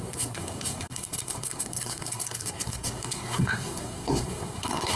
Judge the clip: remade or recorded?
remade